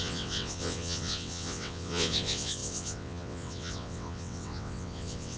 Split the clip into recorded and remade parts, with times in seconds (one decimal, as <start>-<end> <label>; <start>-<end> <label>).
0.0-5.4 remade